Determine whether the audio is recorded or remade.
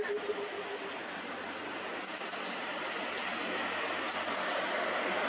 recorded